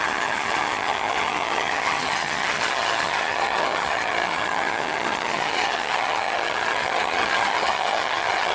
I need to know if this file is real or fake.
fake